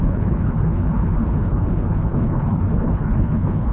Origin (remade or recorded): remade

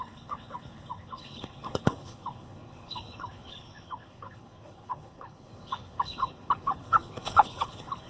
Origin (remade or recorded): remade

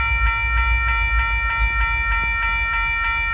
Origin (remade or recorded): recorded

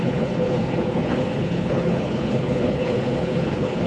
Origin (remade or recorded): remade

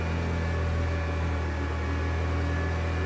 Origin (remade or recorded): recorded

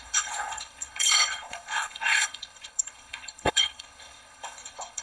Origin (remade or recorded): remade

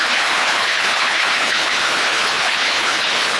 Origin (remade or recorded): remade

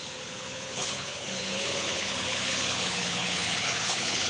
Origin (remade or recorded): remade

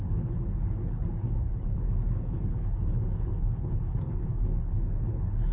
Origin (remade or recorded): remade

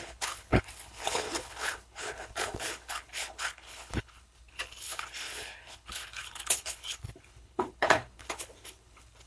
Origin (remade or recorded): remade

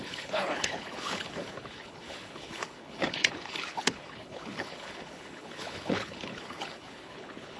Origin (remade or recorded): remade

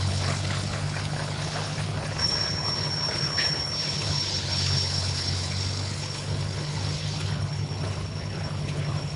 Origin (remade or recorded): remade